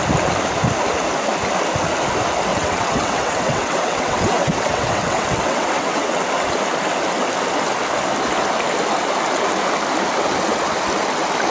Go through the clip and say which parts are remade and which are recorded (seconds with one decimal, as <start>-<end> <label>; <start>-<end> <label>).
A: 0.0-2.5 recorded; 2.5-6.2 remade; 6.2-11.5 recorded